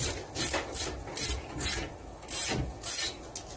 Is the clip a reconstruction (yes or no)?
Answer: no